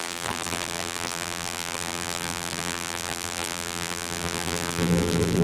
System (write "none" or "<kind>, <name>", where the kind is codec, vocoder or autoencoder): vocoder, BigVGAN v2